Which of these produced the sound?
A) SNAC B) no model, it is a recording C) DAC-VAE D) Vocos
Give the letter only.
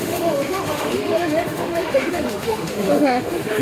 C